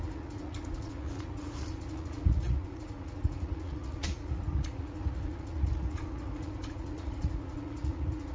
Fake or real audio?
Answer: fake